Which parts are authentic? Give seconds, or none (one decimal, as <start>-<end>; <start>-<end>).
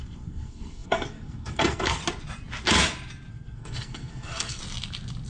2.0-3.3; 4.6-5.3